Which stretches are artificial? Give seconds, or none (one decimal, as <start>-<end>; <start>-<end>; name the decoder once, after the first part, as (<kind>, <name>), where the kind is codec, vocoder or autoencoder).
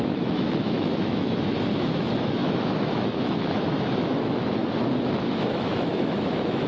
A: 0.0-4.6 (autoencoder, DAC-VAE); 5.2-6.7